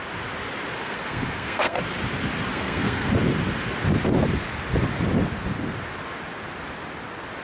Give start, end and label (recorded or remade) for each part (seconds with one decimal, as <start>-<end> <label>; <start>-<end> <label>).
0.0-0.8 recorded; 0.8-1.8 remade; 1.8-2.5 recorded; 2.5-3.1 remade; 3.1-7.4 recorded